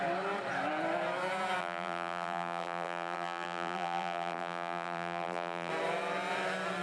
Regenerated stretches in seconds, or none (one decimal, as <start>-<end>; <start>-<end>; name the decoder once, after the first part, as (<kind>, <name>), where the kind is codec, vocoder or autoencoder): 1.6-5.7 (vocoder, BigVGAN v2)